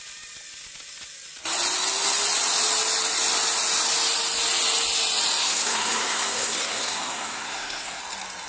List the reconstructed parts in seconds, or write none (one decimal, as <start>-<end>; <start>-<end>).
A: 5.4-8.0